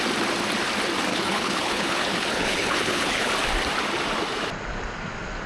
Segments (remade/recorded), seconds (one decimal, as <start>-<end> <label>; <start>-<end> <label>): 0.0-1.1 recorded; 1.1-3.3 remade; 3.3-5.5 recorded